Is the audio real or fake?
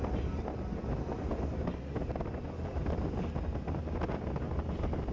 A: real